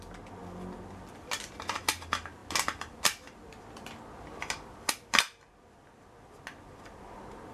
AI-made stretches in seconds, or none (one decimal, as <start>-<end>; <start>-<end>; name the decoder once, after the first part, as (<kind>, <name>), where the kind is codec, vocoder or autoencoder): none